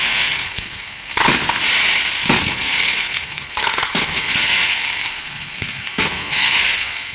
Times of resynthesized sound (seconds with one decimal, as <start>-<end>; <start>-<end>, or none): 0.0-1.1; 2.4-7.1